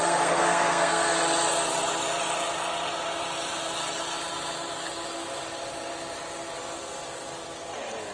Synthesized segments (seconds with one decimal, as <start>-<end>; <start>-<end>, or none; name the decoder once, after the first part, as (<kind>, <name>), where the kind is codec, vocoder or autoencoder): 0.0-1.1 (codec, SNAC)